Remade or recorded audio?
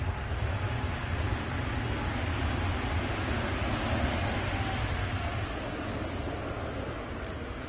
recorded